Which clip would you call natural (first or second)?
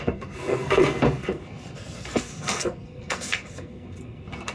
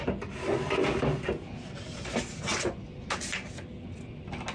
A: second